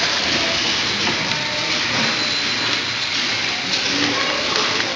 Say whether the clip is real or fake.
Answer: real